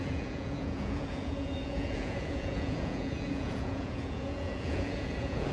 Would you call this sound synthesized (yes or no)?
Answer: yes